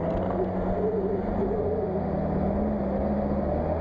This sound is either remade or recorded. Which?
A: recorded